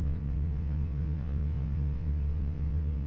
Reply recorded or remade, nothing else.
remade